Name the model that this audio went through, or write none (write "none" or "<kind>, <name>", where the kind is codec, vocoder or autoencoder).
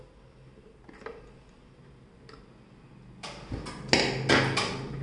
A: none